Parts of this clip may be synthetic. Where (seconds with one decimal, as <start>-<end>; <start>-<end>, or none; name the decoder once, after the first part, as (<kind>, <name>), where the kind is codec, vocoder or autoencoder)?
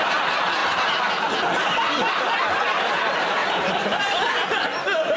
none